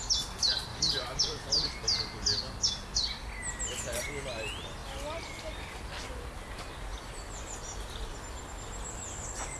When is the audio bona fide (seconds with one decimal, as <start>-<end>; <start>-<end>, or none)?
0.0-0.7; 1.7-4.8; 5.8-6.9; 8.2-9.6